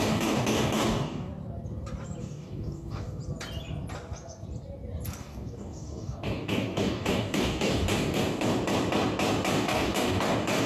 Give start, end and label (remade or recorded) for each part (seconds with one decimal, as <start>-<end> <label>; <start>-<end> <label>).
0.0-1.3 remade; 1.3-2.2 recorded; 2.2-3.2 remade; 3.2-5.2 recorded; 5.2-8.5 remade; 8.5-9.5 recorded; 9.5-10.7 remade